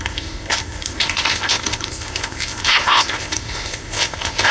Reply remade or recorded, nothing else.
remade